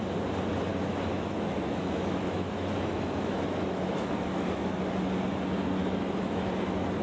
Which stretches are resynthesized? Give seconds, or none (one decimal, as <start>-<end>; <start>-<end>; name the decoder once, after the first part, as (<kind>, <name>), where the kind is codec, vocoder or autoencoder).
0.7-4.9 (autoencoder, DAC-VAE); 5.8-6.5